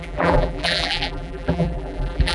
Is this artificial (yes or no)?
yes